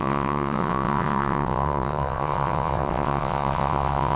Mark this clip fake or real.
fake